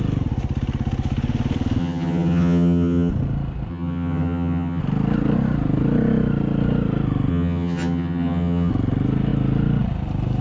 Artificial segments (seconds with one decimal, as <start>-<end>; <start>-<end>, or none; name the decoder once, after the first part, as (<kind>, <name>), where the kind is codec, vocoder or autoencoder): 1.8-3.1 (vocoder, HiFi-GAN); 3.7-4.8; 7.3-8.7